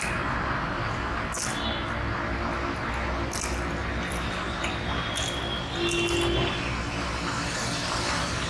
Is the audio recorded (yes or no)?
yes